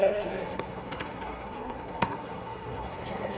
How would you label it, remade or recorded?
remade